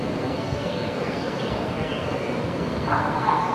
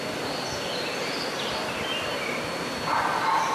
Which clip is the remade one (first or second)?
first